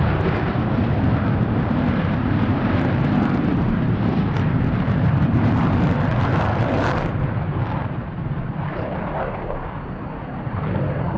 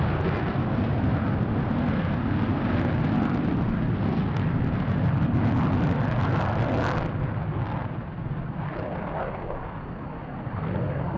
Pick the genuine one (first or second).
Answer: second